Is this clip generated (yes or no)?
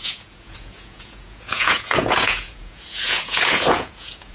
yes